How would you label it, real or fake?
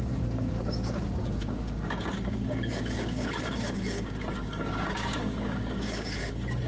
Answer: fake